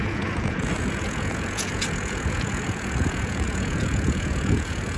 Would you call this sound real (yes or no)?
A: no